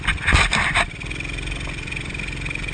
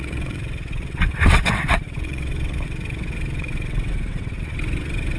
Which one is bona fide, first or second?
first